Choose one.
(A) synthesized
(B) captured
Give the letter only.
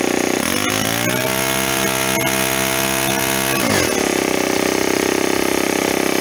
B